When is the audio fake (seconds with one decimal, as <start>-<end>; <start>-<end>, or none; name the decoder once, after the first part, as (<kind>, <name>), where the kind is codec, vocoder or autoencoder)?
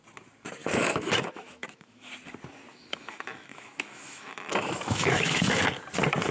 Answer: 0.6-2.1 (autoencoder, DAC-VAE); 2.7-5.6